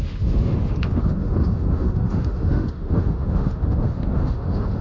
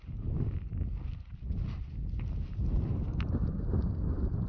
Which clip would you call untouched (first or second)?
second